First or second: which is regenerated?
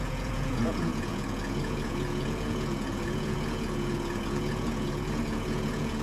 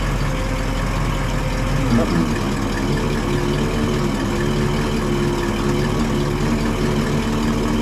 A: first